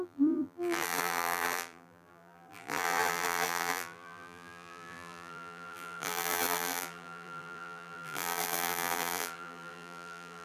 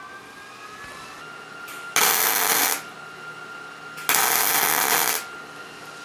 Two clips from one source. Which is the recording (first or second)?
second